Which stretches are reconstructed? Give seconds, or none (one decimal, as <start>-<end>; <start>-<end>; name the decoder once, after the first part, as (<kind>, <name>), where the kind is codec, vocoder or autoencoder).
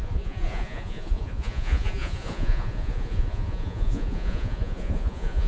0.0-5.5 (vocoder, Vocos)